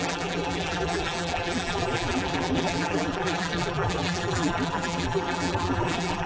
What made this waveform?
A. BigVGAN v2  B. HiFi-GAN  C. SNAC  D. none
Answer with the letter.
A